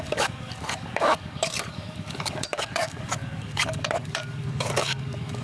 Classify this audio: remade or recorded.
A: remade